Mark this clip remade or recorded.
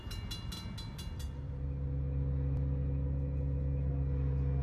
recorded